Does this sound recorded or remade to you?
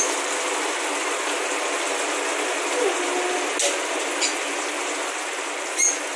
recorded